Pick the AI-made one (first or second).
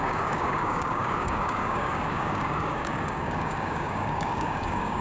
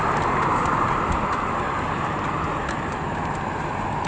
first